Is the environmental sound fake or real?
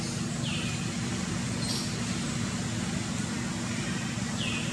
real